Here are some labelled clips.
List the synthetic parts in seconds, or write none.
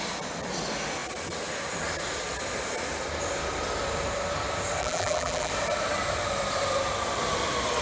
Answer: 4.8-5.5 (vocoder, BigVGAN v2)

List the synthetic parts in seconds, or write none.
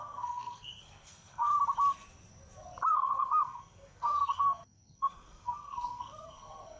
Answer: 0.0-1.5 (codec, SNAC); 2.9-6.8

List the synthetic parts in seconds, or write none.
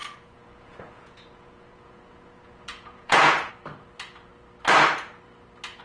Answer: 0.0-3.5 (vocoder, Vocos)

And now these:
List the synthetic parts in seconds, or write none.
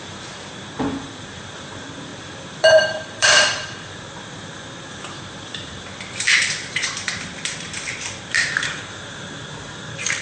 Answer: 0.0-10.2 (vocoder, BigVGAN v2)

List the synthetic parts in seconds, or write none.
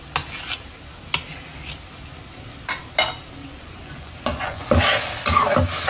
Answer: 3.4-4.8 (vocoder, Vocos)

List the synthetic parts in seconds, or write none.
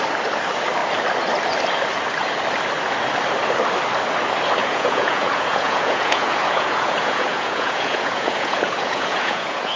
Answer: 4.6-9.8 (vocoder, Vocos)